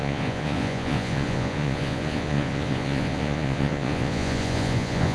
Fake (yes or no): yes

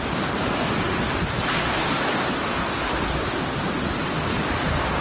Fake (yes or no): no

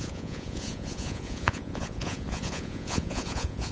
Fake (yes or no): yes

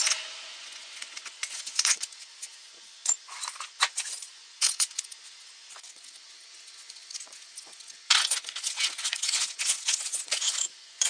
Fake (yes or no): yes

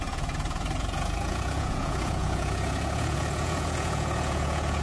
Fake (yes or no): yes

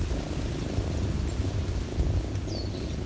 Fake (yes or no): no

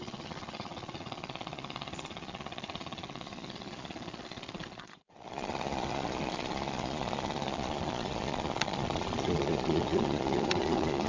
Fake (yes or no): yes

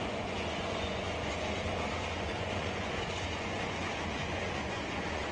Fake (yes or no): yes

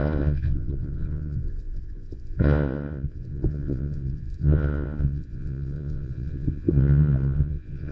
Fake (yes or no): yes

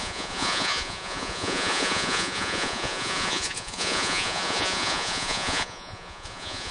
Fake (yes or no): yes